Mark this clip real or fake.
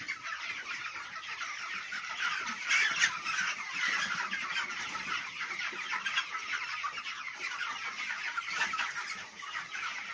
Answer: real